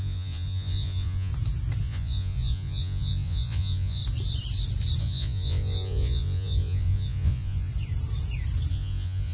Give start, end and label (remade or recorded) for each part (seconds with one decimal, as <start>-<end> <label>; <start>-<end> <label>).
0.0-1.3 remade; 1.3-1.8 recorded; 1.8-4.0 remade; 4.0-5.0 recorded; 5.0-7.7 remade; 7.7-8.7 recorded; 8.7-9.3 remade